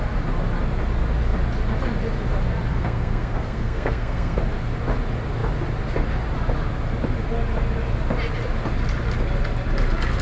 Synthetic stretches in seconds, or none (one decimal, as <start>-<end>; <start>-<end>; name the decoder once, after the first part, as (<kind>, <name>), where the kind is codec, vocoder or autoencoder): 2.7-4.4 (codec, SNAC)